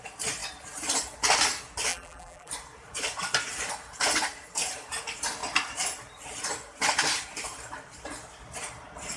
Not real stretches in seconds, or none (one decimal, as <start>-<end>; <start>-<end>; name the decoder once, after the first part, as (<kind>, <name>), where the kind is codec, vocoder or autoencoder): 1.9-2.5 (vocoder, BigVGAN v2)